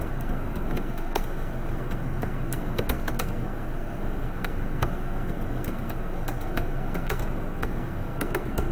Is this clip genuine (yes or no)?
no